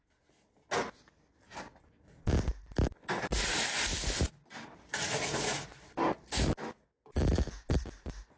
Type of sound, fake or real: real